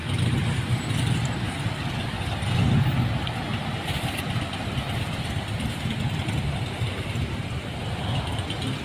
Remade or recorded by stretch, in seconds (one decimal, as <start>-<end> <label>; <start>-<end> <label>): 0.0-8.8 recorded